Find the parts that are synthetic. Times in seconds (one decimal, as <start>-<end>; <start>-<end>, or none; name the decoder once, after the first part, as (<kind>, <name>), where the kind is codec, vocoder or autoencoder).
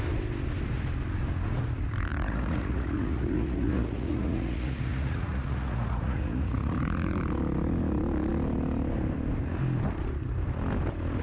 2.1-7.2 (vocoder, Vocos)